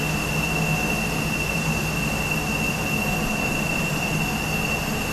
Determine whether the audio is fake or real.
real